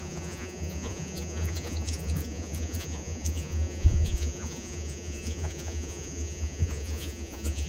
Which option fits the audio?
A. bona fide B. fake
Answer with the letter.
B